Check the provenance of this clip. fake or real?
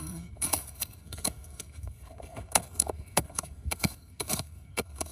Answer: fake